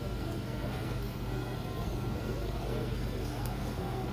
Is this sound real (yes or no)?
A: no